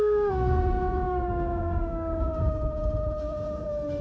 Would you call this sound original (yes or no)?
no